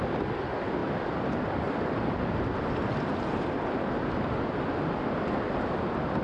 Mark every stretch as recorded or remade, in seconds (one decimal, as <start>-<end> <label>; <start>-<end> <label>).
0.0-6.2 recorded